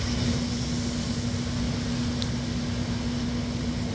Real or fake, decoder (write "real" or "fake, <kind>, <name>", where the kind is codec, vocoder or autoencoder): real